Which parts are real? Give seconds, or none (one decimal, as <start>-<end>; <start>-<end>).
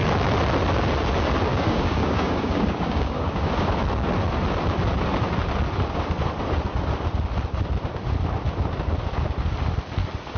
0.0-1.5; 3.5-10.4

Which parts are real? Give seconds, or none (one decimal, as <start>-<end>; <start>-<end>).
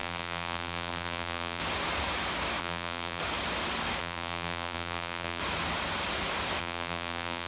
1.6-2.6; 3.2-4.0; 5.4-6.6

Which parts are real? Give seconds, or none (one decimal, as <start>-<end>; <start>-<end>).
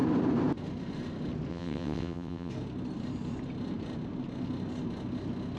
0.0-1.5; 2.5-5.6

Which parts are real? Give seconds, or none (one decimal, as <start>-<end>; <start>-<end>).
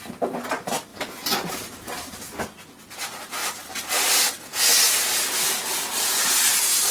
0.0-0.9; 2.4-6.9